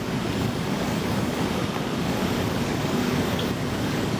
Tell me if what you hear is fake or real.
fake